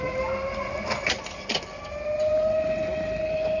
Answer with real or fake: real